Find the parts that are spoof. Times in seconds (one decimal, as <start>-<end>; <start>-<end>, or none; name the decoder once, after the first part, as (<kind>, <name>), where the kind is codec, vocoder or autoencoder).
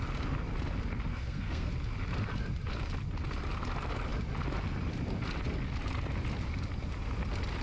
1.1-1.7 (codec, SNAC)